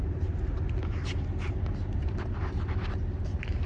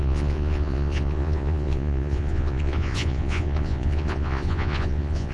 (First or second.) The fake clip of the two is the second